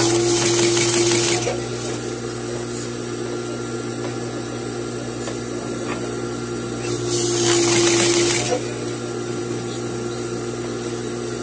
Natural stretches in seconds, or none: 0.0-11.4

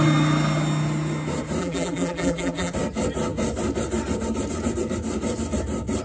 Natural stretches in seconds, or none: 0.0-1.6; 2.7-6.0

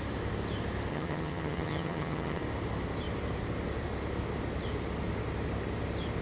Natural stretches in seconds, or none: 0.0-0.9; 2.4-6.2

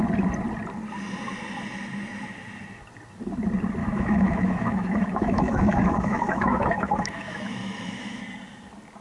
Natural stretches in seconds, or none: 0.0-3.8; 8.2-9.0

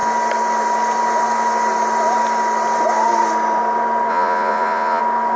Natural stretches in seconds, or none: 0.0-4.1; 5.0-5.4

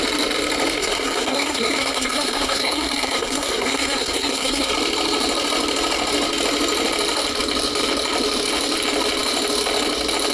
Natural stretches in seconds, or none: 0.0-0.8; 4.7-10.3

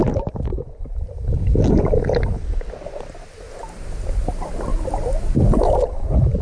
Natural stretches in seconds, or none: 0.0-6.4